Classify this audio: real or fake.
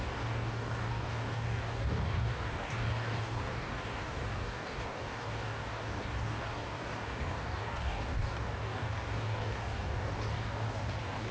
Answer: fake